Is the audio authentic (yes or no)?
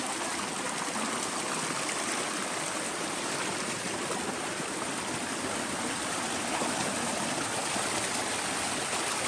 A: yes